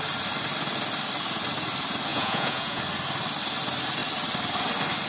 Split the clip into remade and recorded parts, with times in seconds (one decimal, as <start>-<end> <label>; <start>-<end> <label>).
0.0-2.1 recorded; 2.1-2.8 remade; 2.8-5.1 recorded